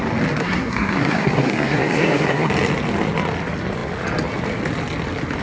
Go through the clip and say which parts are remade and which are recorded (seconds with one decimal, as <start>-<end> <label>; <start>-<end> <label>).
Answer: 0.0-0.4 recorded; 0.4-2.5 remade; 2.5-5.4 recorded